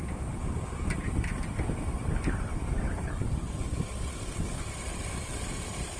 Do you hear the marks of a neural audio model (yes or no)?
no